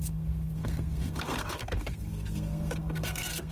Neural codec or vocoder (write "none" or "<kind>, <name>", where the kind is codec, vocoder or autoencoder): codec, SNAC